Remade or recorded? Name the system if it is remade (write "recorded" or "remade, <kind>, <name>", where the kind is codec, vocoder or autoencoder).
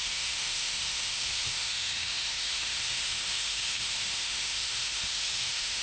remade, autoencoder, DAC-VAE